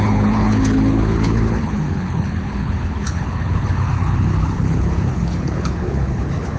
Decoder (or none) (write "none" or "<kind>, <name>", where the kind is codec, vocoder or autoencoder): codec, HILCodec